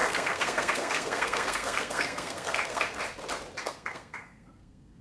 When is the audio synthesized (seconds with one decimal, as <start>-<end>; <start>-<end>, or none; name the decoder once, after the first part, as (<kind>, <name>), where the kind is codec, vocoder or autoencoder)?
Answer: 0.0-3.0 (codec, SNAC); 3.6-5.0

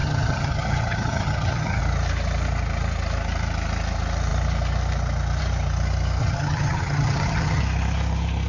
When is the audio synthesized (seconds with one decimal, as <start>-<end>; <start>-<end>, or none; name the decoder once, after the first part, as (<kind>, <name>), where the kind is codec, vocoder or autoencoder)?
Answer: 0.0-1.8 (vocoder, HiFi-GAN); 6.2-7.6

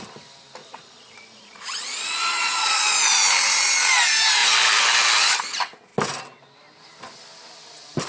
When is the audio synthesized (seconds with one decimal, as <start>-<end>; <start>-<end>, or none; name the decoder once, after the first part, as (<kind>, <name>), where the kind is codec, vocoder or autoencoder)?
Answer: 0.6-3.2 (vocoder, Vocos)

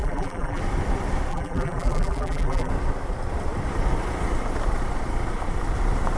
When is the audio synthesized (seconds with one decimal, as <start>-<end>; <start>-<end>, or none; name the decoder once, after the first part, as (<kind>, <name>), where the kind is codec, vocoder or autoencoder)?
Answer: 0.0-0.6 (vocoder, BigVGAN v2); 1.3-2.7

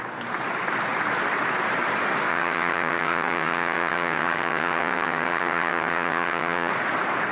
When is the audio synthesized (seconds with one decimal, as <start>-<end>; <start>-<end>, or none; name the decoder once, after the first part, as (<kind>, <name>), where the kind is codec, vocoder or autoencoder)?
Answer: 2.3-6.7 (vocoder, HiFi-GAN)

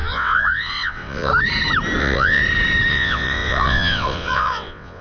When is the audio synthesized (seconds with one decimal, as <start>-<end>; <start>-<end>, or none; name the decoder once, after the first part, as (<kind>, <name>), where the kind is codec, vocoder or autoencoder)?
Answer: 0.0-1.3 (vocoder, WaveNeXt); 2.0-2.4; 2.9-5.0

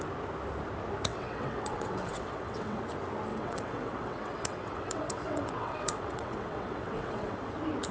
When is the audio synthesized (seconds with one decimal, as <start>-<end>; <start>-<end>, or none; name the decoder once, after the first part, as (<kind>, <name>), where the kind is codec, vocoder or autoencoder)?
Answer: 1.1-2.8 (vocoder, WaveNeXt); 3.3-7.5